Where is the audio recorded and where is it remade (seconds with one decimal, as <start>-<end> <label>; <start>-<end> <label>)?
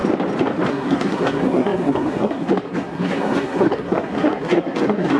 0.0-0.7 recorded; 0.7-5.2 remade